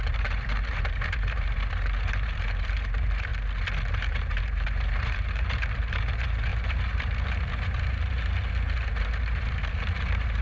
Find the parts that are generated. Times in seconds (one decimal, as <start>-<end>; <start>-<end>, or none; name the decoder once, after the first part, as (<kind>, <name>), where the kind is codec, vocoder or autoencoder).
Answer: 0.0-3.3 (vocoder, BigVGAN v2); 3.9-10.4